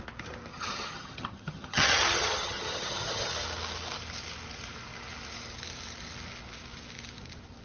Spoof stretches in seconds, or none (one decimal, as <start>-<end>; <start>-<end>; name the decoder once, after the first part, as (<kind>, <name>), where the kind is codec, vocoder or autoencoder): 0.5-3.3 (vocoder, HiFi-GAN)